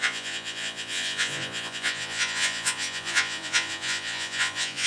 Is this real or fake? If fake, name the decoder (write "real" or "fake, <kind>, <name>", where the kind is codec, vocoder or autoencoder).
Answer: fake, vocoder, Vocos